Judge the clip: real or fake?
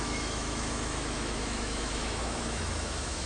fake